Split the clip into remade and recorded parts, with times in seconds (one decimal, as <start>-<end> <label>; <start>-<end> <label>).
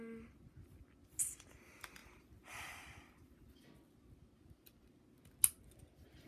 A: 0.0-6.3 recorded